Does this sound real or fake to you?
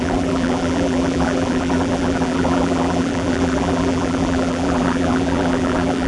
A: fake